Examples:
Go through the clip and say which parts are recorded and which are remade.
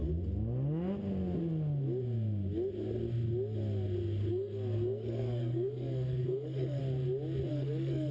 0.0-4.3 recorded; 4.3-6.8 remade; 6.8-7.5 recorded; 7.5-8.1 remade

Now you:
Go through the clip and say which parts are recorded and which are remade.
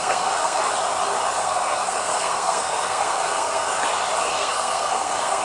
0.0-0.6 remade; 0.6-1.4 recorded; 1.4-3.7 remade; 3.7-4.2 recorded; 4.2-5.4 remade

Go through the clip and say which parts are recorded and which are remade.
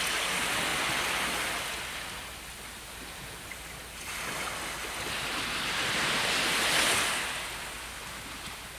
0.0-8.8 recorded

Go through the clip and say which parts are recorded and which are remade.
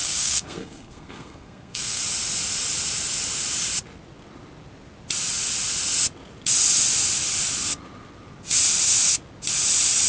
0.0-2.0 remade; 2.0-10.1 recorded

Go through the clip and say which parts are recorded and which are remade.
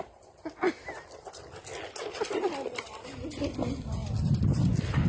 0.0-5.1 recorded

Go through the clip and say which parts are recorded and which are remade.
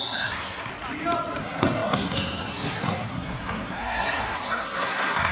0.0-0.7 remade; 0.7-1.4 recorded; 1.4-5.3 remade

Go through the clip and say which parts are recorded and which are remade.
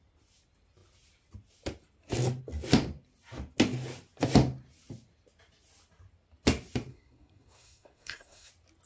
0.0-6.9 recorded; 6.9-8.5 remade; 8.5-8.9 recorded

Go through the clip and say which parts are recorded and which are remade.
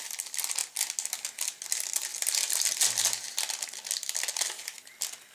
0.0-5.3 recorded